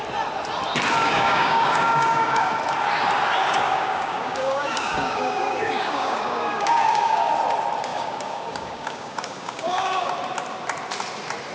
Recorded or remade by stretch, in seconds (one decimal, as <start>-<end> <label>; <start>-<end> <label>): 0.0-1.0 recorded; 1.0-2.5 remade; 2.5-3.4 recorded; 3.4-7.3 remade; 7.3-7.9 recorded; 7.9-10.1 remade; 10.1-11.5 recorded